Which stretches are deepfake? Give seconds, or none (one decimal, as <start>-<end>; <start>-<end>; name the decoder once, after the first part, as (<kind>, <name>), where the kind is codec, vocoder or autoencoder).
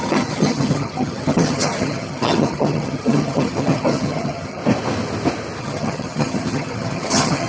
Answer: 0.0-4.6 (vocoder, HiFi-GAN); 5.6-7.5